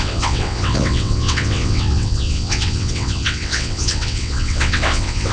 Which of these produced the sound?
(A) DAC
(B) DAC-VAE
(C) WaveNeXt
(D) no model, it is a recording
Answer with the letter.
C